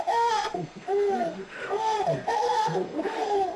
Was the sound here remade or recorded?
remade